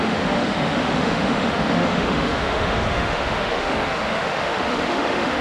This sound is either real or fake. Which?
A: fake